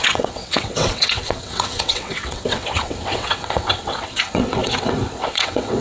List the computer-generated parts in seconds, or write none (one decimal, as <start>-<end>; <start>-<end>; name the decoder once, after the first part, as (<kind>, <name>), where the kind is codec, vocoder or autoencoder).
0.0-5.8 (vocoder, WaveNeXt)